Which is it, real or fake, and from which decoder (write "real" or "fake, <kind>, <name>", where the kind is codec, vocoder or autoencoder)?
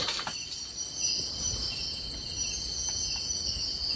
real